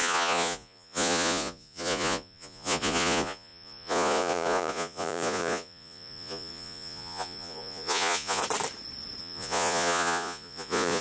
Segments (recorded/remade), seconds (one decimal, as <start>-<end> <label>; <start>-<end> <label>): 0.0-8.4 remade; 8.4-9.2 recorded; 9.2-11.0 remade